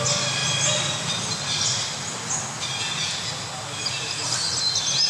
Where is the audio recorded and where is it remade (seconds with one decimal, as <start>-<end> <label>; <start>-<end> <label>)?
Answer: 0.0-5.1 recorded